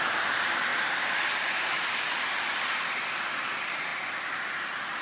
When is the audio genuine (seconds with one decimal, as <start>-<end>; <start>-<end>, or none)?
0.7-1.6